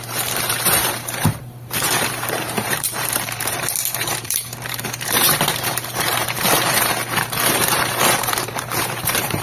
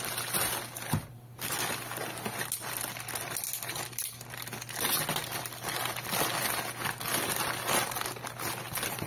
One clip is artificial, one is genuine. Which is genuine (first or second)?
second